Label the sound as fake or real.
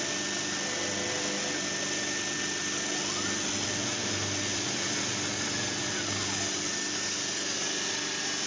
real